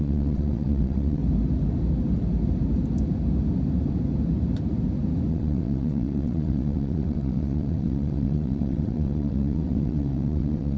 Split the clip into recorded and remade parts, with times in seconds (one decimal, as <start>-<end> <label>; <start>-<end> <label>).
0.0-1.2 remade; 1.2-5.3 recorded; 5.3-10.8 remade